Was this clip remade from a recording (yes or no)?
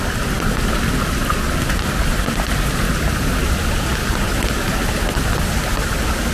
no